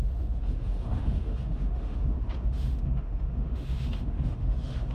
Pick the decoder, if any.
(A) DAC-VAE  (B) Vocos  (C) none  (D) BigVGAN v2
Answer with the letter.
A